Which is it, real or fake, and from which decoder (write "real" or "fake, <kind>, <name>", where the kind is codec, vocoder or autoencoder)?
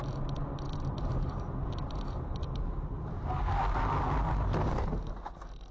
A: real